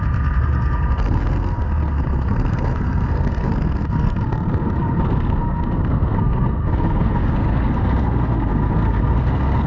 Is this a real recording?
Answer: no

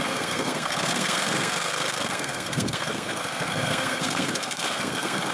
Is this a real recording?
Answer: no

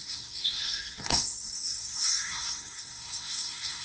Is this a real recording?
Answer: no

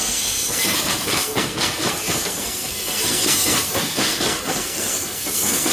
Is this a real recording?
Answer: no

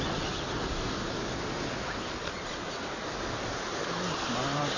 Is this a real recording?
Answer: yes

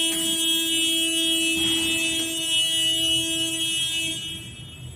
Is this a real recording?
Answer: yes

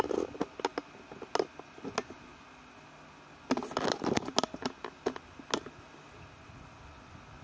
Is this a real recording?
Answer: yes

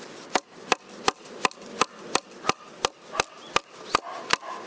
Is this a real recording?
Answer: yes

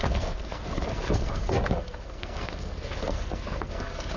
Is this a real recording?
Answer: no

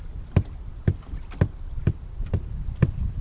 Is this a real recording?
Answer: yes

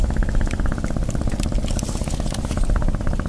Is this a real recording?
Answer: yes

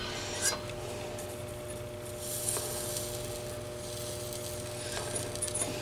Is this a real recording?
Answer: yes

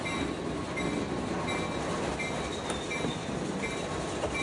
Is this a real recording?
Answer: yes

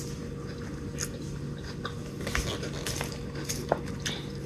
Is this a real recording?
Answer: yes